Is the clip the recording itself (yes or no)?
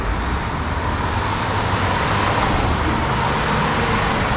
yes